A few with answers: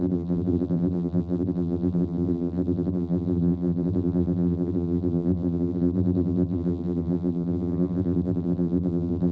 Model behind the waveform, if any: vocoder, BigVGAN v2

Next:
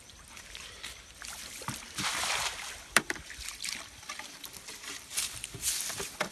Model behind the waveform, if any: vocoder, BigVGAN v2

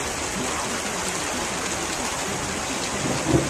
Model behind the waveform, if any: none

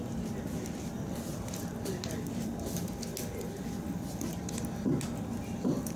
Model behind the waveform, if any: none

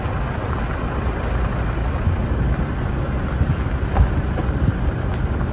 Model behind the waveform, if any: none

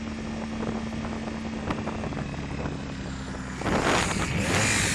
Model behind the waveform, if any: none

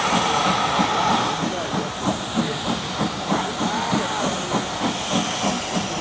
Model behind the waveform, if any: vocoder, BigVGAN v2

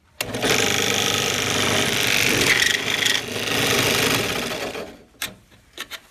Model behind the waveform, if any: none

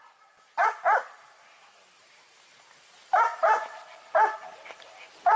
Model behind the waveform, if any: none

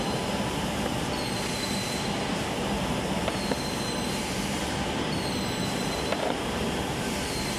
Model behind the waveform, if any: vocoder, BigVGAN v2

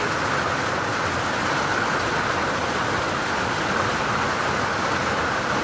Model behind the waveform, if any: none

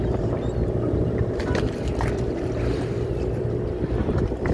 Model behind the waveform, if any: vocoder, BigVGAN v2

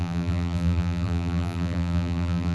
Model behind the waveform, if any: vocoder, BigVGAN v2